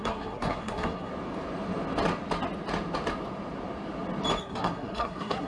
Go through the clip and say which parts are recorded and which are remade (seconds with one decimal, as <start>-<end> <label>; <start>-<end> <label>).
0.0-1.1 remade; 1.1-4.4 recorded; 4.4-5.5 remade